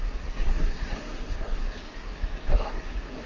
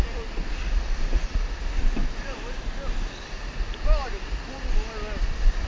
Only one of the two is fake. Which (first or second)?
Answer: first